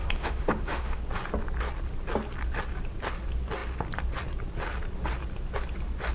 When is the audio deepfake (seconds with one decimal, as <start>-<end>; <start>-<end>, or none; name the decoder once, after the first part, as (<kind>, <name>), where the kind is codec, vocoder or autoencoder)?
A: 0.0-1.0 (autoencoder, DAC-VAE)